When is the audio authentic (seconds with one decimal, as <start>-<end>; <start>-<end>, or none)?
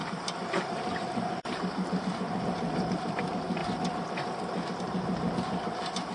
3.6-4.8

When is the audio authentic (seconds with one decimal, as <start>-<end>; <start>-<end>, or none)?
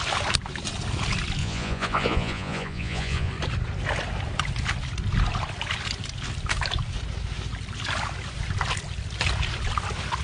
0.0-1.4; 3.3-10.2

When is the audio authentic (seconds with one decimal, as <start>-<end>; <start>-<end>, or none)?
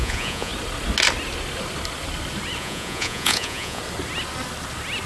0.5-2.6; 3.8-5.1